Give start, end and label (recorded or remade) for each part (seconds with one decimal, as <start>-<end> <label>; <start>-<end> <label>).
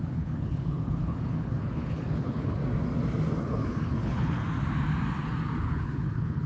0.0-2.6 remade; 2.6-3.4 recorded; 3.4-4.4 remade; 4.4-5.6 recorded; 5.6-6.5 remade